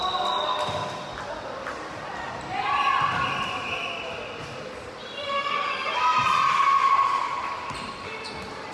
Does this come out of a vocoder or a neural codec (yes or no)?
no